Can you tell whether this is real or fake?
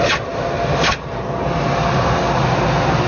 real